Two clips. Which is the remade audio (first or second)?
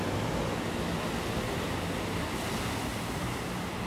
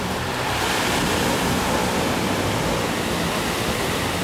second